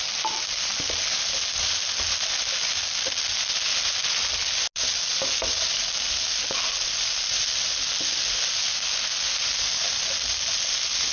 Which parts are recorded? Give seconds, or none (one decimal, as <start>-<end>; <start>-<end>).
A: 0.0-11.1